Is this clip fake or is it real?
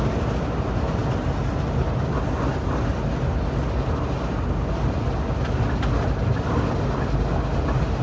real